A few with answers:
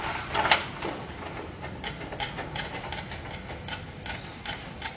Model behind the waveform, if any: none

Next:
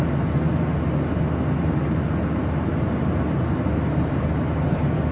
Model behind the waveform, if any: none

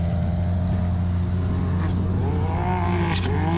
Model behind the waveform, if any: none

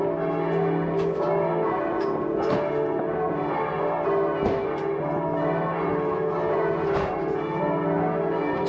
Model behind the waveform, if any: none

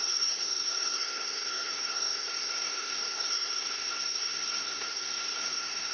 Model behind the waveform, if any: codec, SNAC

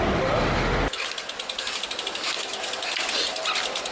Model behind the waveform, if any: none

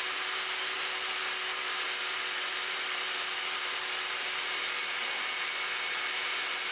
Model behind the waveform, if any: none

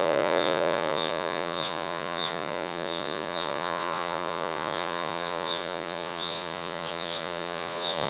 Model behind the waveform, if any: vocoder, Vocos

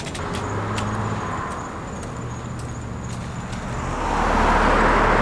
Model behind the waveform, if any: none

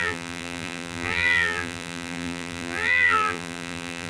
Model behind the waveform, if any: vocoder, BigVGAN v2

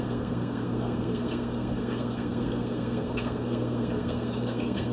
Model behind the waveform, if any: codec, SNAC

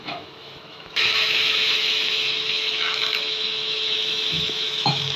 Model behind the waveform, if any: autoencoder, DAC-VAE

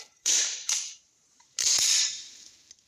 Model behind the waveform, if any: vocoder, BigVGAN v2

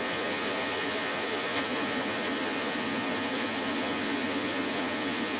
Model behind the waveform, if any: vocoder, Vocos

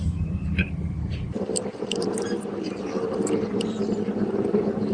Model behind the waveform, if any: vocoder, BigVGAN v2